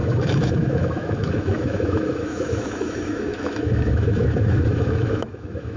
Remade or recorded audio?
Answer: remade